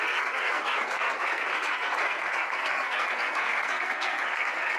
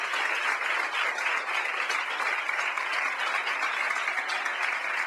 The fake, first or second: first